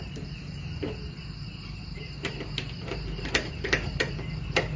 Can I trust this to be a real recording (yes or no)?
no